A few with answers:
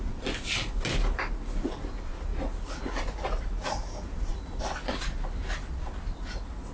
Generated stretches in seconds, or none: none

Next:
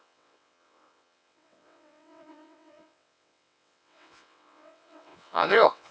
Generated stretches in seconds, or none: 0.0-5.9

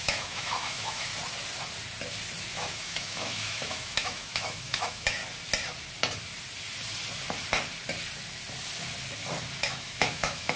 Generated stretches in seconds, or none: 0.0-1.1; 2.5-5.2; 9.6-10.6

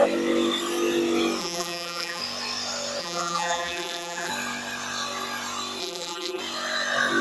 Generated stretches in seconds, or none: 1.4-2.2; 3.0-4.3; 5.8-6.4

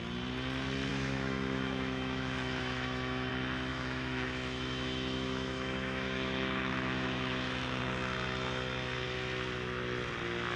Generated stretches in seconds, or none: 0.9-3.3; 3.7-7.8

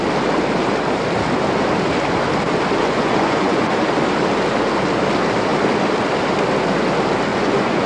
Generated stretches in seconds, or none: 2.8-3.7; 7.3-7.9

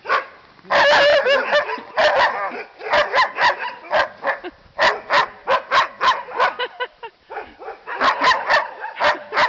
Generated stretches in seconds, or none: none

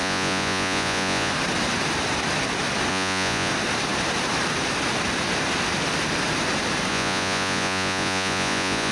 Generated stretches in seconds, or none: 0.0-1.3; 2.9-3.5; 6.9-8.9